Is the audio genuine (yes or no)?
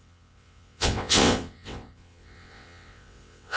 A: no